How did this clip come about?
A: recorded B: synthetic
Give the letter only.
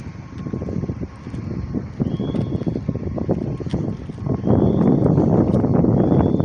A